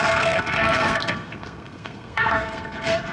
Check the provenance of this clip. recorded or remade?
remade